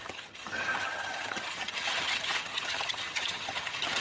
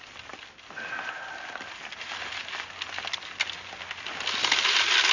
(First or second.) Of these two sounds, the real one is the second